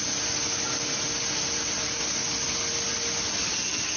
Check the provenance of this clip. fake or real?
real